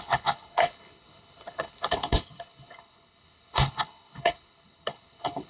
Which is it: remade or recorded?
remade